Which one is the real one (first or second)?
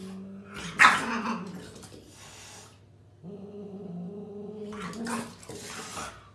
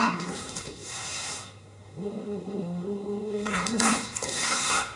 first